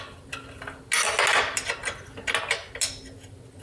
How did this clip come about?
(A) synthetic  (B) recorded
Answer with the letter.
B